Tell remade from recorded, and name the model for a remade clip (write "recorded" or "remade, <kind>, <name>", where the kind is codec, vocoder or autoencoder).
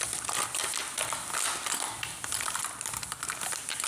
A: recorded